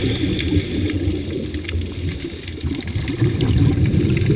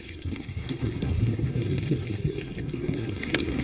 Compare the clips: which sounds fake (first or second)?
second